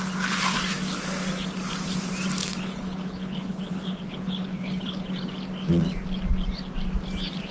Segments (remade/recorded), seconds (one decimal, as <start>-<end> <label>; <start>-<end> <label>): 0.0-2.4 recorded; 2.4-5.1 remade; 5.1-7.5 recorded